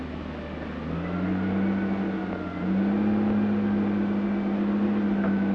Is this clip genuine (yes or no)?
yes